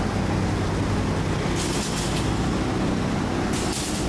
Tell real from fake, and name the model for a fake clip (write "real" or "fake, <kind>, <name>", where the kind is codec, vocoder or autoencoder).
real